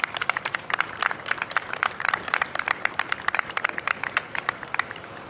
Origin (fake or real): fake